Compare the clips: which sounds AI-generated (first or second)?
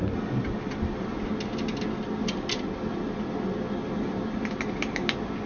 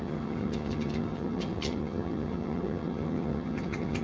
second